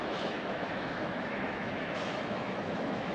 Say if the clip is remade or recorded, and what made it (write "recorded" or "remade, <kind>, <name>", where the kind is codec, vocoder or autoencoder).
remade, autoencoder, DAC-VAE